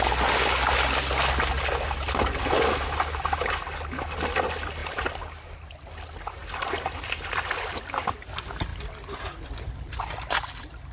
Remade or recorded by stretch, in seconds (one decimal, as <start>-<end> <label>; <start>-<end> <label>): 0.0-10.9 recorded